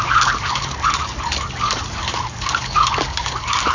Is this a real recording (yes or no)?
no